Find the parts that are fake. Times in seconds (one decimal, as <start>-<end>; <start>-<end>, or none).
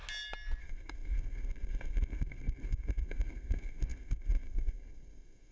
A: 0.6-5.5